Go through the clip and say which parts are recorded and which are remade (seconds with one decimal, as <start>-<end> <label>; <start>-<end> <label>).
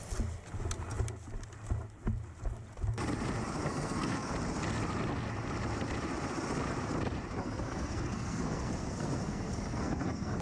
0.0-3.6 recorded; 3.6-4.3 remade; 4.3-7.4 recorded; 7.4-10.4 remade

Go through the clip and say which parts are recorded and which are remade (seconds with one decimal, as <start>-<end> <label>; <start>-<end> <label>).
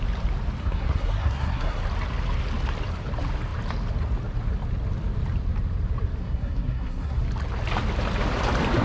0.0-0.6 recorded; 0.6-1.8 remade; 1.8-6.2 recorded; 6.2-7.2 remade; 7.2-8.8 recorded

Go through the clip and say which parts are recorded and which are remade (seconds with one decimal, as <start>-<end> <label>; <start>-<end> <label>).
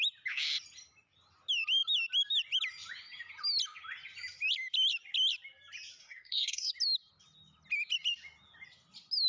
0.0-6.0 recorded; 6.0-6.7 remade; 6.7-9.3 recorded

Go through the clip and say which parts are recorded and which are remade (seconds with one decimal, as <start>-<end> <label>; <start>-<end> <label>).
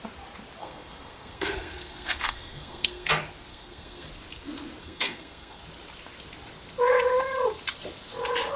0.0-0.6 recorded; 0.6-3.1 remade; 3.1-3.5 recorded; 3.5-4.1 remade; 4.1-4.8 recorded; 4.8-5.6 remade; 5.6-8.6 recorded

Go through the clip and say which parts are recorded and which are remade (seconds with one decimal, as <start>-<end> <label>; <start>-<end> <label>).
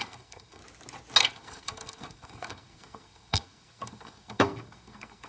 0.0-0.6 remade; 0.6-1.2 recorded; 1.2-5.3 remade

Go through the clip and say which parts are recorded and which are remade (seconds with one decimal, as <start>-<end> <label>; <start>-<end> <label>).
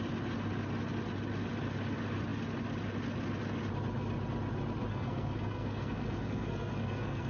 0.0-4.9 recorded; 4.9-7.3 remade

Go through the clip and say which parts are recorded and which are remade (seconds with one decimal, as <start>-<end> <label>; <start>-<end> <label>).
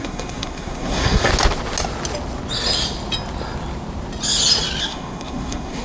0.0-1.3 remade; 1.3-4.8 recorded; 4.8-5.8 remade